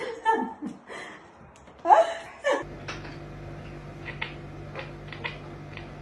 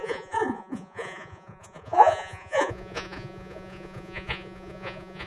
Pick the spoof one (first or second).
second